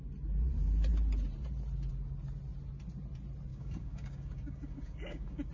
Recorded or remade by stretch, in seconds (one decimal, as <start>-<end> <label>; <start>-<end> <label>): 0.0-3.5 recorded; 3.5-5.5 remade